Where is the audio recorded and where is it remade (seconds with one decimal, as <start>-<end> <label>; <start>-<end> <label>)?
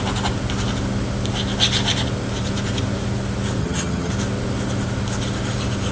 0.0-3.6 recorded; 3.6-4.1 remade; 4.1-5.9 recorded